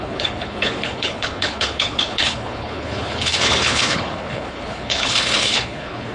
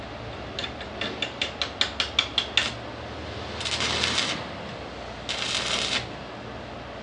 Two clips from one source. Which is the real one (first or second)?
second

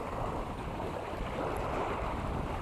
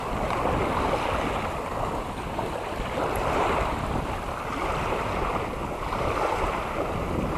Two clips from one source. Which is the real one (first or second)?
second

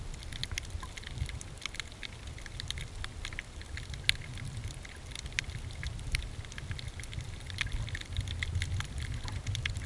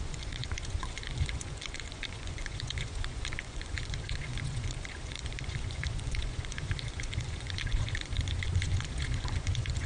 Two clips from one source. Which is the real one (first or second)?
first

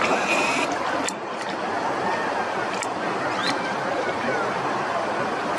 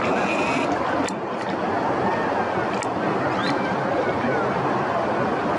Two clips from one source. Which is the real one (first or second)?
second